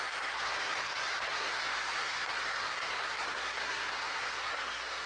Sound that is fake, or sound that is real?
fake